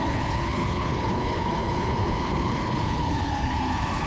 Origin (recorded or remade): remade